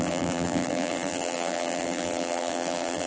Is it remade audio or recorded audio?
remade